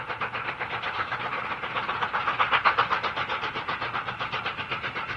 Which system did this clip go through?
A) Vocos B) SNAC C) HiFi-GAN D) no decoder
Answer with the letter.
D